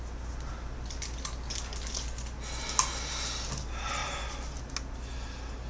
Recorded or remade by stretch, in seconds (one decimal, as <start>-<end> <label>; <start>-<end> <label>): 0.0-5.7 recorded